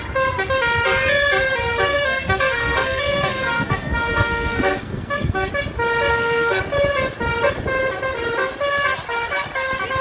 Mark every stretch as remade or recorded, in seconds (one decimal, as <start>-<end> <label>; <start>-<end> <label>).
0.0-1.9 recorded; 1.9-5.5 remade; 5.5-6.1 recorded; 6.1-6.6 remade; 6.6-10.0 recorded